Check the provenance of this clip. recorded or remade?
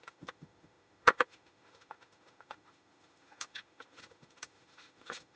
remade